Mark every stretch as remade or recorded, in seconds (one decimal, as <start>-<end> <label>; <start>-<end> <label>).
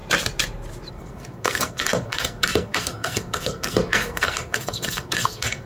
0.0-0.9 recorded; 0.9-5.7 remade